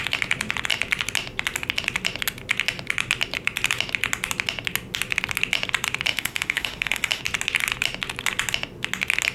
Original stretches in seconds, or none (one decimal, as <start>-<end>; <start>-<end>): 0.0-6.1; 7.2-9.3